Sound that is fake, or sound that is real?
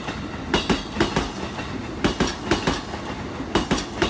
real